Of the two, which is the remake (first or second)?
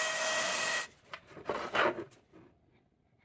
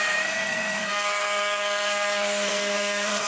second